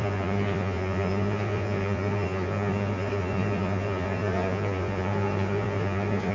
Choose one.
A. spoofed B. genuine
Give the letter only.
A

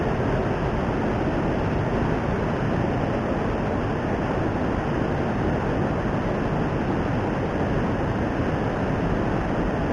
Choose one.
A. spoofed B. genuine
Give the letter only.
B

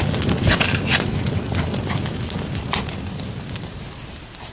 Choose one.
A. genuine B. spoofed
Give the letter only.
A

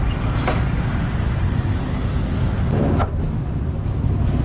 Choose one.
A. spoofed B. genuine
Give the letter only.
B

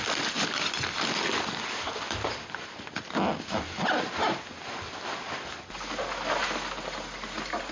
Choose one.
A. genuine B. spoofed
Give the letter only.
A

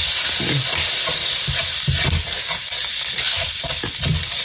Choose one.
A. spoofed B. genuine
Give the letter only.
B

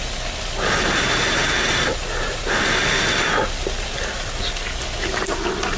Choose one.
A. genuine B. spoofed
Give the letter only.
A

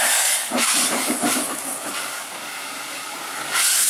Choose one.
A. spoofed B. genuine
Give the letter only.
A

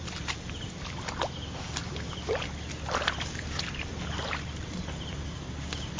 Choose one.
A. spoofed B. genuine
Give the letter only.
B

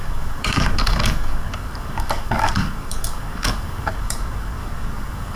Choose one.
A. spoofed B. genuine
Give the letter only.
A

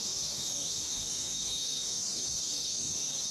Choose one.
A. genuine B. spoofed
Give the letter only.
B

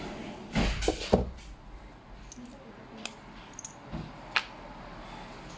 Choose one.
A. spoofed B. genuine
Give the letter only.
B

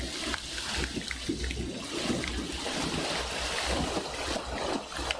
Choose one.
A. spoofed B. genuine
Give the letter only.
B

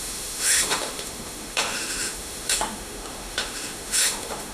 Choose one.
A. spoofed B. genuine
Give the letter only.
A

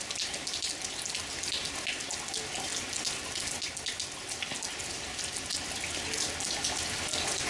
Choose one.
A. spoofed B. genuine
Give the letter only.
B